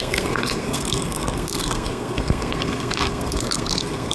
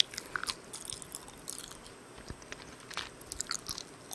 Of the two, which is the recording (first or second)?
second